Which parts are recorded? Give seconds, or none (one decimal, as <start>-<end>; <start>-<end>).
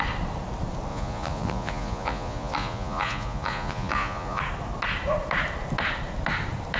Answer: 0.0-0.9; 4.4-6.8